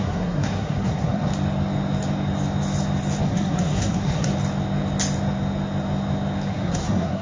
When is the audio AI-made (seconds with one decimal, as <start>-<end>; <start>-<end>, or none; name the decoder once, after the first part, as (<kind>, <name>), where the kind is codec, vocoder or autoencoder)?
0.0-1.3 (codec, SNAC); 3.2-4.3; 6.5-7.2